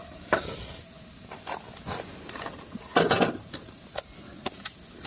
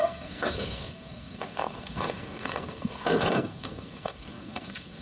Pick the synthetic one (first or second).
second